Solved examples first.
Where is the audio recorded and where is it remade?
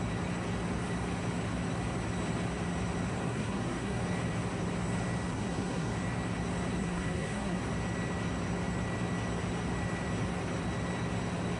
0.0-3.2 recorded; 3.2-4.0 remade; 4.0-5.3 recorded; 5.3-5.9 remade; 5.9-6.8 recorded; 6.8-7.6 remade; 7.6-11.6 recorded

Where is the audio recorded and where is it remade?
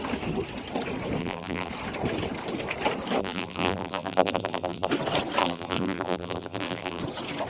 0.0-1.2 recorded; 1.2-1.7 remade; 1.7-3.2 recorded; 3.2-4.9 remade; 4.9-5.4 recorded; 5.4-7.0 remade; 7.0-7.5 recorded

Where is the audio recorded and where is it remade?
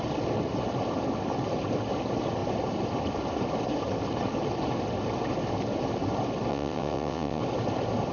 0.0-6.5 recorded; 6.5-7.4 remade; 7.4-8.1 recorded